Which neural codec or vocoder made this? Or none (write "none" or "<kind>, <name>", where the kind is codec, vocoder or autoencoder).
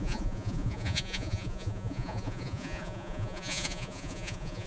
vocoder, Vocos